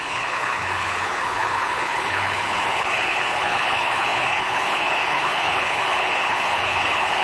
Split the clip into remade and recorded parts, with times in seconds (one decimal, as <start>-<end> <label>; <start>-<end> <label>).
0.0-7.2 remade